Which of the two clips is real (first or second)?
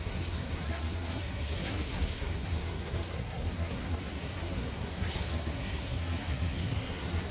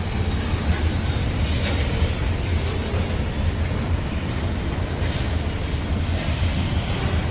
second